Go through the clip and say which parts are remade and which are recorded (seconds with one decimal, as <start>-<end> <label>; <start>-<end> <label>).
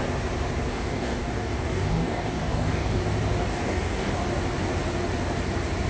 0.0-0.7 recorded; 0.7-3.0 remade; 3.0-3.5 recorded; 3.5-4.1 remade; 4.1-5.9 recorded